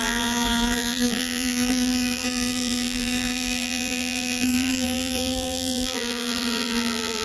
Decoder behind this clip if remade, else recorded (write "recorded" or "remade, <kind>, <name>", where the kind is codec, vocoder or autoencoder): remade, vocoder, BigVGAN v2